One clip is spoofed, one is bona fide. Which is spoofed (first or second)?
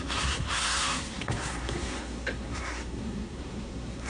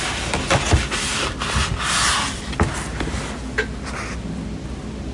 first